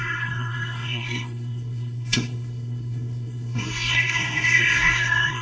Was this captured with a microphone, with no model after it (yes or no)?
no